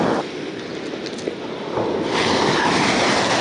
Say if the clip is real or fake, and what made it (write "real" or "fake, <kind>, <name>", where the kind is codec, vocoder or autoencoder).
real